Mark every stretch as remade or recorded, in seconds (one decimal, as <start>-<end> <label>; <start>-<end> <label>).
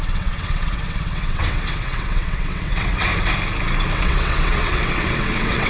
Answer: 0.0-3.1 remade; 3.1-3.9 recorded; 3.9-5.7 remade